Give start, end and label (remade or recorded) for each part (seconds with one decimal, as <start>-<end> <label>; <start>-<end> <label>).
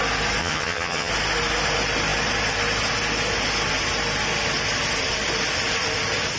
0.0-0.4 recorded; 0.4-1.1 remade; 1.1-6.4 recorded